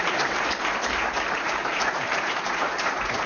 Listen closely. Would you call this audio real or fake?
fake